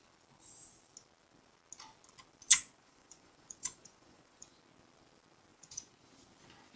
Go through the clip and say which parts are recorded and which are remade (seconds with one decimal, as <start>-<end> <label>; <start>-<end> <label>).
0.0-2.5 recorded; 2.5-4.6 remade; 4.6-5.5 recorded; 5.5-6.1 remade; 6.1-6.8 recorded